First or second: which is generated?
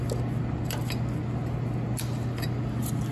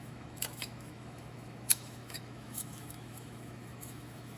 second